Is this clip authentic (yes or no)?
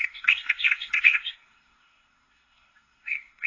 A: no